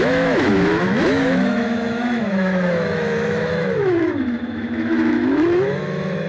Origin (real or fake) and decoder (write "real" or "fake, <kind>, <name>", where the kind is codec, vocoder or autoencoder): fake, autoencoder, DAC-VAE